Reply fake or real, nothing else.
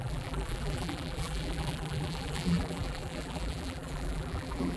fake